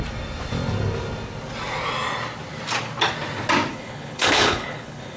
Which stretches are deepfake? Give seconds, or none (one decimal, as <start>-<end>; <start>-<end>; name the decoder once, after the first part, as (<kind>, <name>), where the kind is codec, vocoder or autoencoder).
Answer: 3.7-5.2 (codec, HILCodec)